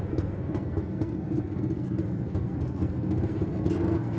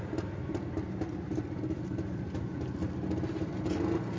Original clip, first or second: second